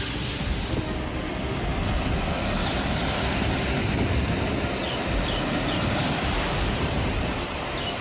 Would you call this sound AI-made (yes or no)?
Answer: no